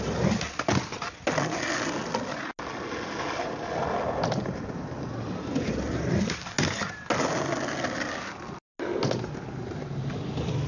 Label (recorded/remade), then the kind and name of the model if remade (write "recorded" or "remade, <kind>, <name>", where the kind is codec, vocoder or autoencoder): recorded